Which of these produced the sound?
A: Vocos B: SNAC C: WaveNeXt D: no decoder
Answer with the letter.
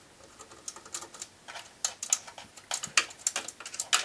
D